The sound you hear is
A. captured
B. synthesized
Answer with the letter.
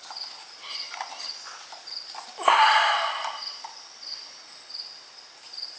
A